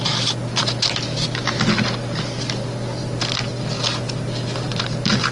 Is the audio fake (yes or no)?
no